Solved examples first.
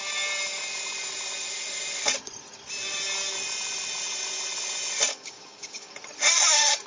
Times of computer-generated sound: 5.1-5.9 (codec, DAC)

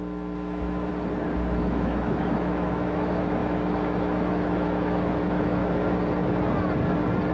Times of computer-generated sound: 0.0-0.9 (autoencoder, DAC-VAE); 1.6-5.6

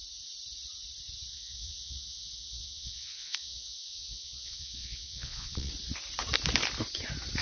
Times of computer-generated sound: 1.3-5.7 (vocoder, Vocos)

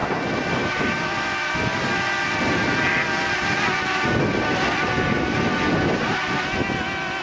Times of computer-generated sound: none

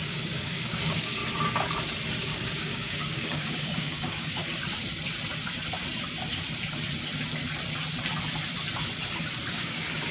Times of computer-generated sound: 0.0-1.2 (codec, DAC); 2.2-4.4; 9.5-10.1

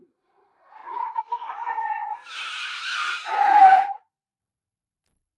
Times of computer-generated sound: 0.0-0.8 (vocoder, BigVGAN v2); 3.9-5.4

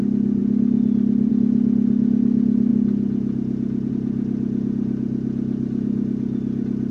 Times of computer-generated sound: none

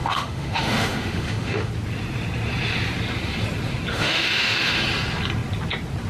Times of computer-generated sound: 0.0-1.7 (autoencoder, DAC-VAE); 3.9-4.8